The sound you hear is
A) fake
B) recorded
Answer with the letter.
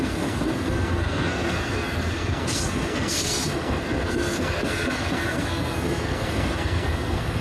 A